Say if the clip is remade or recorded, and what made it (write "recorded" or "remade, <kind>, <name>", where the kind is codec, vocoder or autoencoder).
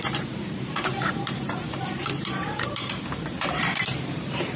remade, vocoder, BigVGAN v2